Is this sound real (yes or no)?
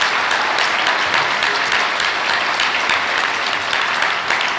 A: yes